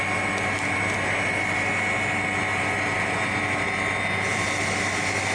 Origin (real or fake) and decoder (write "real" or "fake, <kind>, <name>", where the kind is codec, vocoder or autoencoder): real